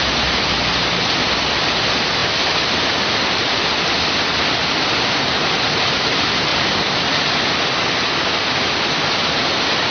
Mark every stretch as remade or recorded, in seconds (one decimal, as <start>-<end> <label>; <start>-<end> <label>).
0.0-2.2 recorded; 2.2-5.6 remade; 5.6-6.5 recorded; 6.5-7.1 remade; 7.1-9.9 recorded